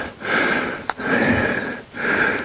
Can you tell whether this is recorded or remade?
recorded